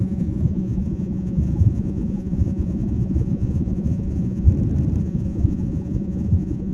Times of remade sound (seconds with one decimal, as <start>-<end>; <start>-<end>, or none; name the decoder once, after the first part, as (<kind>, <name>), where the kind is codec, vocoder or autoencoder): 0.0-4.5 (vocoder, Vocos); 5.0-6.7